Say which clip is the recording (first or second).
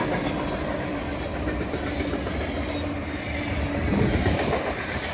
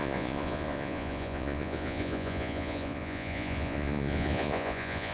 first